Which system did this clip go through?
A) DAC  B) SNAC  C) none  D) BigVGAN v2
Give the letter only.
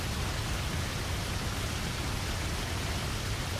C